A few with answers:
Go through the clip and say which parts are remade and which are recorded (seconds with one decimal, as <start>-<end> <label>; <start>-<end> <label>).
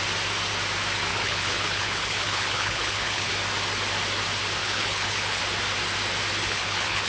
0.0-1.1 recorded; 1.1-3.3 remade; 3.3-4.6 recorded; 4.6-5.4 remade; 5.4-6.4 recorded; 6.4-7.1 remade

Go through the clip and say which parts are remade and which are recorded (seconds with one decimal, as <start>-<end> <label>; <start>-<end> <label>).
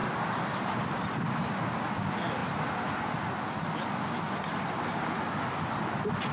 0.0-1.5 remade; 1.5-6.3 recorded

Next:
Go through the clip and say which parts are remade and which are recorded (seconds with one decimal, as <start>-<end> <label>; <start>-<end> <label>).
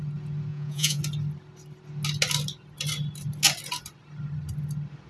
0.0-0.5 recorded; 0.5-1.0 remade; 1.0-5.1 recorded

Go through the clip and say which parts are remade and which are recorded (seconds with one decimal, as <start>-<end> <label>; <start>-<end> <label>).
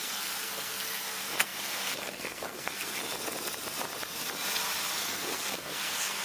0.0-3.0 remade; 3.0-5.0 recorded; 5.0-6.2 remade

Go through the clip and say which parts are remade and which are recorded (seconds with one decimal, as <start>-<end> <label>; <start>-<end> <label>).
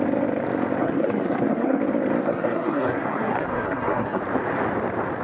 0.0-0.8 recorded; 0.8-1.8 remade; 1.8-2.2 recorded; 2.2-4.2 remade; 4.2-5.2 recorded